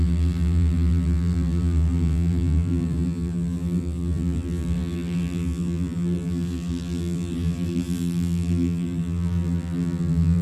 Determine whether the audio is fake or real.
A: fake